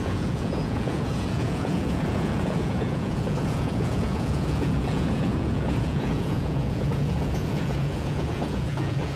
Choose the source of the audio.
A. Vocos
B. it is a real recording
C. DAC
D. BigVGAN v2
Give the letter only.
A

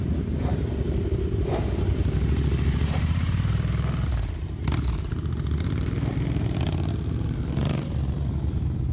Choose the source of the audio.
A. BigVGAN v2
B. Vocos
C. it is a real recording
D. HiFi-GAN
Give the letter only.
A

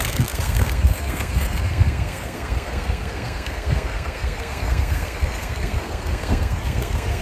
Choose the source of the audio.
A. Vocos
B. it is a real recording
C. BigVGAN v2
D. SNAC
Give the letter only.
D